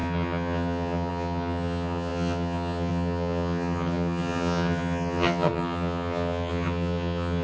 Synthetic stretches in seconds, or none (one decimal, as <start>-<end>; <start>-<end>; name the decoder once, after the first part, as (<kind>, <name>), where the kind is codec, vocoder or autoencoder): 0.0-7.4 (vocoder, HiFi-GAN)